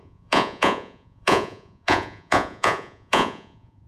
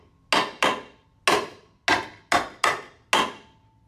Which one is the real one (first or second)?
second